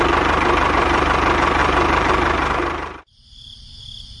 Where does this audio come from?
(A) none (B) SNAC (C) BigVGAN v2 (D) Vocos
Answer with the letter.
C